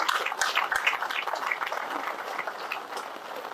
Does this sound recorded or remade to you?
recorded